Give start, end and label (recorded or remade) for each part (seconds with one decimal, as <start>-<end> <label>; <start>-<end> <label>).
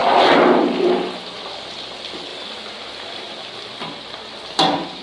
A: 0.0-0.6 recorded; 0.6-2.3 remade; 2.3-2.9 recorded; 2.9-5.0 remade